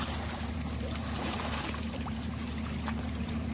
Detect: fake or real fake